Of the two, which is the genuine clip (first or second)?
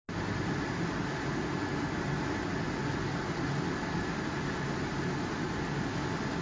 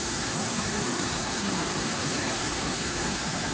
first